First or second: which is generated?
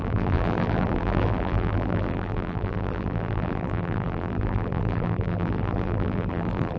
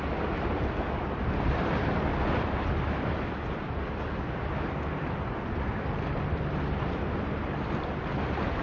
first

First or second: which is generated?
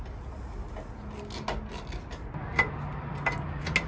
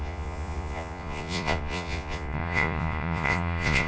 second